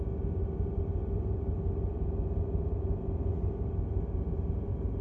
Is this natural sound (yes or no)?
no